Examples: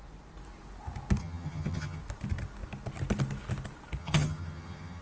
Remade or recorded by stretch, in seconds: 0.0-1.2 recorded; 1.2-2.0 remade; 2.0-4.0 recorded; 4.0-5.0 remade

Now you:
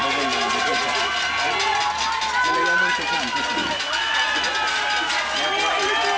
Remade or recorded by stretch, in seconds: 0.0-6.2 recorded

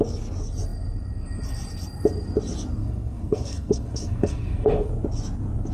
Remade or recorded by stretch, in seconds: 0.0-2.8 recorded; 2.8-4.9 remade; 4.9-5.7 recorded

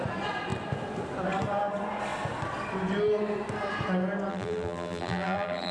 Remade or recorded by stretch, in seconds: 0.0-4.3 recorded; 4.3-5.7 remade

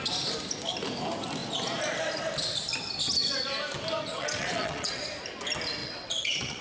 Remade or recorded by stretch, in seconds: 0.0-4.1 recorded; 4.1-5.0 remade; 5.0-5.8 recorded; 5.8-6.6 remade

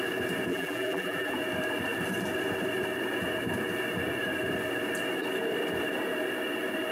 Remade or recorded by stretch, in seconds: 0.0-0.5 recorded; 0.5-1.3 remade; 1.3-6.9 recorded

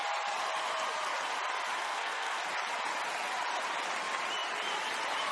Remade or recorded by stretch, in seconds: 0.0-1.8 recorded; 1.8-2.4 remade; 2.4-5.3 recorded